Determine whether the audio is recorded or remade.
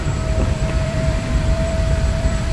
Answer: remade